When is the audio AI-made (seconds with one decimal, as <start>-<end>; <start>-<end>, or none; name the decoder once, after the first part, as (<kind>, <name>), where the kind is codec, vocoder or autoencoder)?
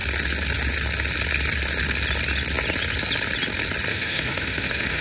3.9-5.0 (autoencoder, DAC-VAE)